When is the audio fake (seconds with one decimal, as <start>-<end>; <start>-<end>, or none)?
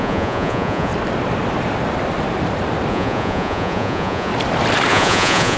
0.0-0.9; 2.9-4.3; 4.9-5.6